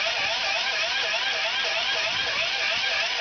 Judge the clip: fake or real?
fake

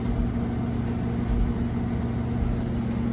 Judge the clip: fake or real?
real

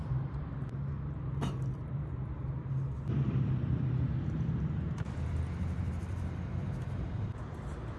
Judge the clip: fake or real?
fake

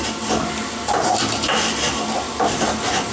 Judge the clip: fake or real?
real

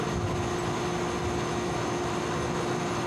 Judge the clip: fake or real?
real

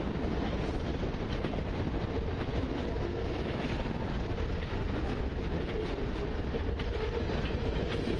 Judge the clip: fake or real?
real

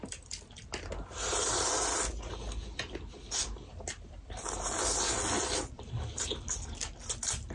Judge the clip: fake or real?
real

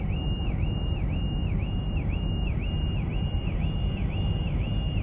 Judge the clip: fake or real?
real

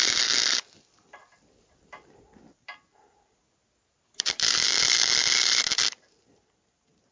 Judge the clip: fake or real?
real